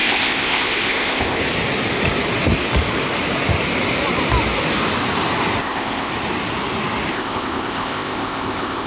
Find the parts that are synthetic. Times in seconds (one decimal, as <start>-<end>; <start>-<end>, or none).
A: 0.0-1.4; 5.6-6.1; 7.1-8.9